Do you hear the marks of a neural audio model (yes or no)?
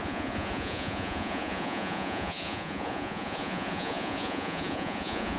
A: yes